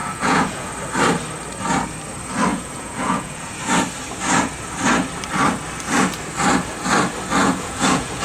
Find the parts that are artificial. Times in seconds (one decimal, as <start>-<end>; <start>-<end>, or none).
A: 0.0-0.7; 2.5-3.5; 7.4-8.2